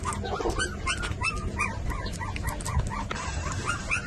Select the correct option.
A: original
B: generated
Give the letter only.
A